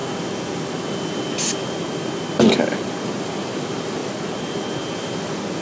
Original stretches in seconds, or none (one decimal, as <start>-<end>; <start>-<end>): 0.0-5.6